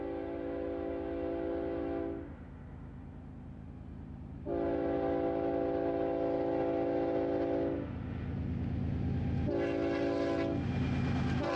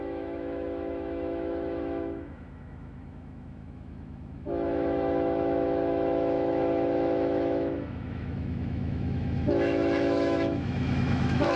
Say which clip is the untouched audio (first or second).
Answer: first